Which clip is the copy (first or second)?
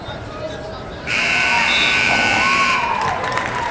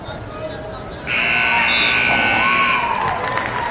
first